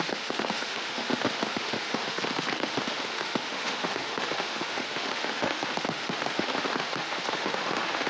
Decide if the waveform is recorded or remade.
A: remade